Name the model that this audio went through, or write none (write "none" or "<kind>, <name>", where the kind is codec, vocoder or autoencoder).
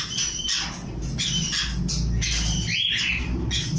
none